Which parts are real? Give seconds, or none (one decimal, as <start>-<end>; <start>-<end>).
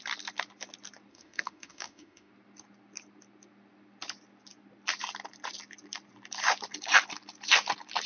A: 0.0-1.1; 2.3-8.1